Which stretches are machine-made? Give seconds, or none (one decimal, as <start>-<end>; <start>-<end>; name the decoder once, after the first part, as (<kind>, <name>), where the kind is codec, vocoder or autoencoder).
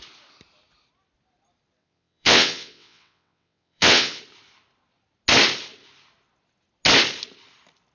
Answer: 1.8-4.2 (vocoder, WaveNeXt)